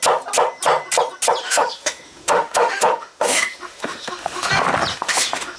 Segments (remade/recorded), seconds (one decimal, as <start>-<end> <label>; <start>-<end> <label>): 0.0-1.4 recorded; 1.4-4.5 remade; 4.5-4.9 recorded; 4.9-5.6 remade

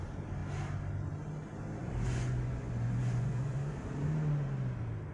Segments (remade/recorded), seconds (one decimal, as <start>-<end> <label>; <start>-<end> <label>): 0.0-1.8 recorded; 1.8-3.7 remade; 3.7-5.1 recorded